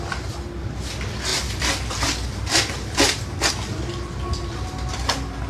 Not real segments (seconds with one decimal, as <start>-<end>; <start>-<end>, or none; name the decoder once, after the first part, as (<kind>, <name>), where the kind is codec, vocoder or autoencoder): none

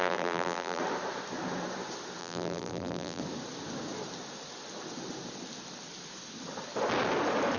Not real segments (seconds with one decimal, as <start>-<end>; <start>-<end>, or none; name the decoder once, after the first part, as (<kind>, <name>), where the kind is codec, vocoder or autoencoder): 0.0-0.8 (vocoder, BigVGAN v2); 2.2-3.2